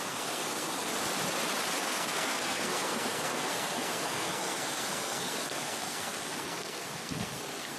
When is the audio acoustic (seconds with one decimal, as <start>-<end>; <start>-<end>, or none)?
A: 0.9-1.8